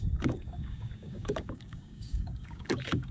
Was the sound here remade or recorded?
remade